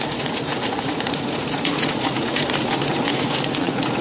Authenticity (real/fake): fake